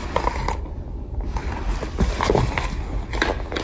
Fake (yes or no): no